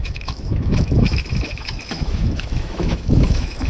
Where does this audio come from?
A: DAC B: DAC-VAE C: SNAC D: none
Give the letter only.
B